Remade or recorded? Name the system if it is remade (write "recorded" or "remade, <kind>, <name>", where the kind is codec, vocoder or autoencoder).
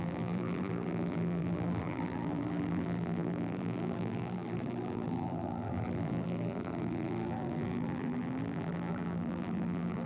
remade, vocoder, BigVGAN v2